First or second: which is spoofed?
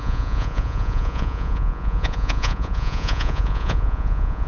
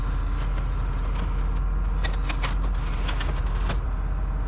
first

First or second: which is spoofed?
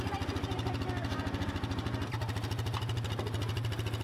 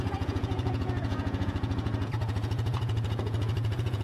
second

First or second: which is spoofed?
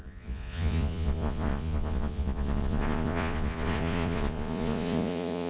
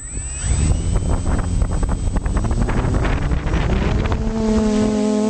first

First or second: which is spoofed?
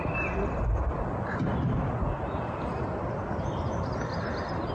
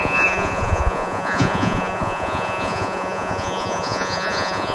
second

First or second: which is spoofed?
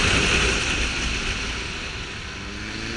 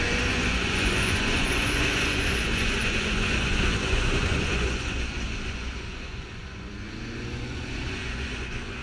second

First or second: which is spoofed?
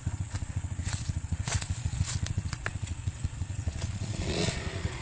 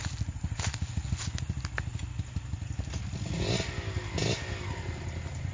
first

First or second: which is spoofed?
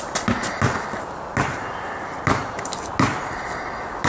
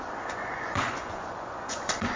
second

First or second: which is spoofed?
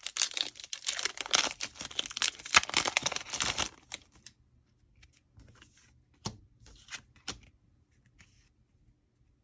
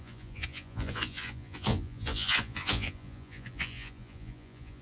second